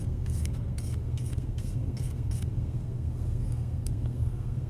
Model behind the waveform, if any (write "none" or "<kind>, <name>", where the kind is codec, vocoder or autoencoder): codec, SNAC